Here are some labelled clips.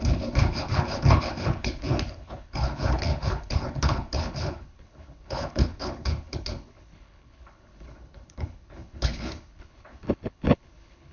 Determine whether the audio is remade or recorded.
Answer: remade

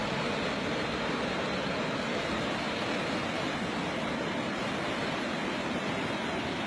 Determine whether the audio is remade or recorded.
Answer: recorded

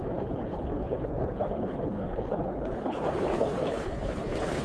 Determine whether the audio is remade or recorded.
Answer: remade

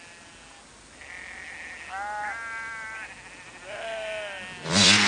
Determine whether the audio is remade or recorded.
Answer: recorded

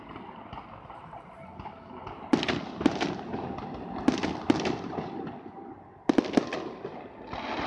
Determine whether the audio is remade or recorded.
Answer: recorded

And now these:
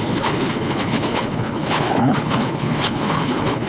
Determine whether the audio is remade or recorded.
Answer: remade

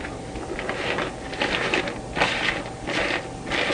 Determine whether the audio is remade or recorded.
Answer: recorded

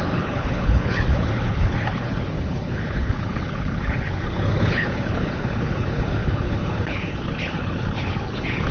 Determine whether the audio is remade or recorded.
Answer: remade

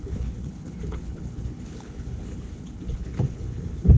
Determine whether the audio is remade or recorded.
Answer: remade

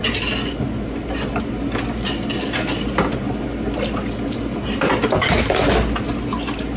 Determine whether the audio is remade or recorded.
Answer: recorded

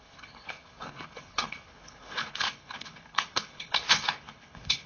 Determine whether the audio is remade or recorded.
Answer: remade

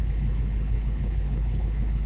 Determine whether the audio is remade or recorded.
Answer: remade